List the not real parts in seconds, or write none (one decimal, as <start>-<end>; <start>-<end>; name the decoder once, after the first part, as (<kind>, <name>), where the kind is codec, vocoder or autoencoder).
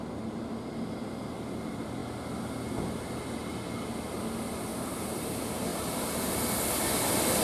4.7-5.3 (vocoder, BigVGAN v2); 5.7-6.3